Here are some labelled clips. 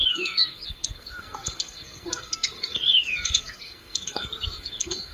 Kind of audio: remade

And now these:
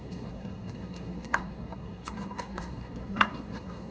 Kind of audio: remade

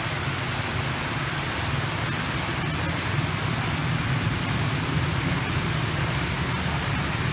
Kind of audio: recorded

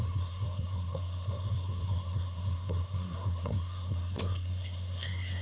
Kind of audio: remade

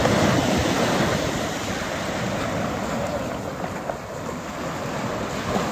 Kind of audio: recorded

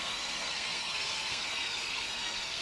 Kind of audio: remade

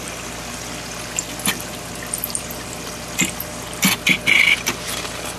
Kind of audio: recorded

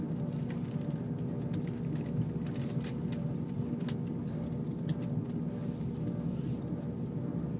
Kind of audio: recorded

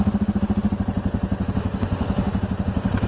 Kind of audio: recorded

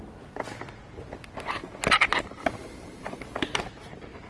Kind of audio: recorded